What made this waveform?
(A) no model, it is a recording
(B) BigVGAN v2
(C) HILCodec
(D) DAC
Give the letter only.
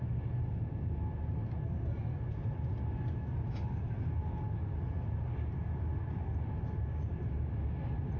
A